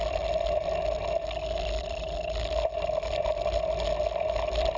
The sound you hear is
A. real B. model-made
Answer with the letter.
A